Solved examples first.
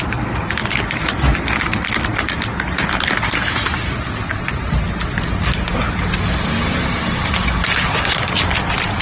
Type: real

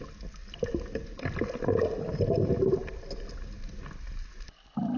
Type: real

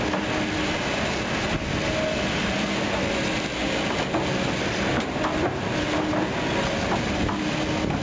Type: real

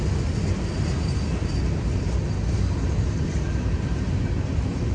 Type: real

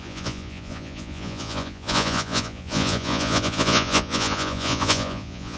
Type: fake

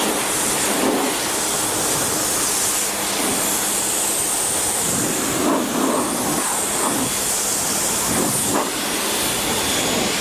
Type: real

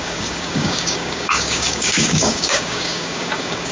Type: fake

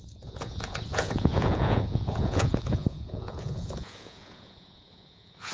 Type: fake